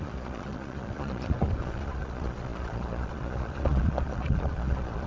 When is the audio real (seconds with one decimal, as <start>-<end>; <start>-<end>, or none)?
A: none